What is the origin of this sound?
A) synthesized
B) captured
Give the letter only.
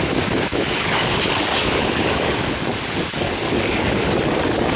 A